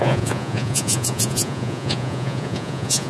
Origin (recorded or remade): remade